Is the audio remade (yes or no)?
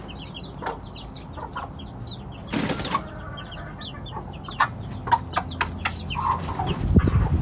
no